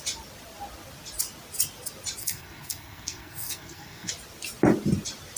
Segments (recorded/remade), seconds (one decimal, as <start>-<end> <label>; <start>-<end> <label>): 0.0-2.2 recorded; 2.2-4.1 remade; 4.1-5.4 recorded